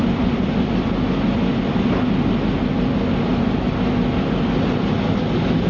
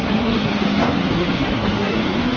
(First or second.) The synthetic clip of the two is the second